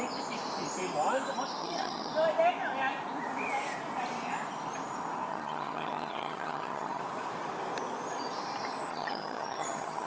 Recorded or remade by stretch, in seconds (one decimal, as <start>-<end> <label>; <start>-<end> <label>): 0.0-1.6 recorded; 1.6-2.1 remade; 2.1-5.3 recorded; 5.3-7.0 remade; 7.0-8.9 recorded; 8.9-10.1 remade